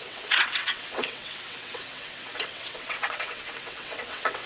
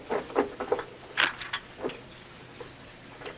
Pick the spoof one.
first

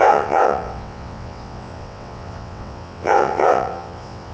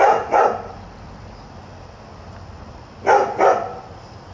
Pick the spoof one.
first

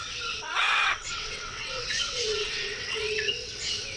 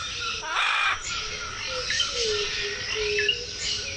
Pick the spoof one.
first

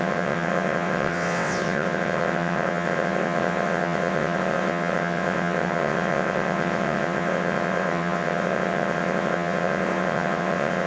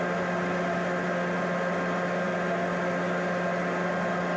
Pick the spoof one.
first